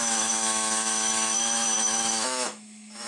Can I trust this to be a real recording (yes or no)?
no